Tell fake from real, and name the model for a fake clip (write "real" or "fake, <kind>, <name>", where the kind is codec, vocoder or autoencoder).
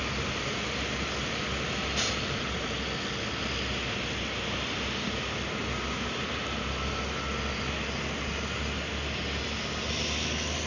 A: real